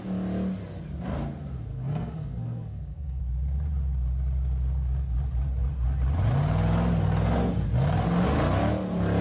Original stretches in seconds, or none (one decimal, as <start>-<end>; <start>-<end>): 0.0-1.7; 3.2-9.2